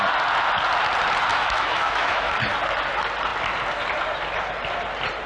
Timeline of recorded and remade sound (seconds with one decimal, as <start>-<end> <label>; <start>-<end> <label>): 0.0-1.3 recorded; 1.3-2.3 remade; 2.3-5.3 recorded